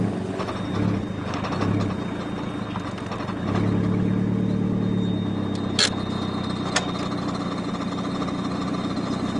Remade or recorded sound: recorded